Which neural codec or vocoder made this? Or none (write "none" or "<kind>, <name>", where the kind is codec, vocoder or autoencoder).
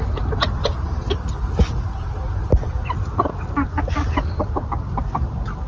none